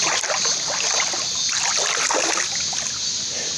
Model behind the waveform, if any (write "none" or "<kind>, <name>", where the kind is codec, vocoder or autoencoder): none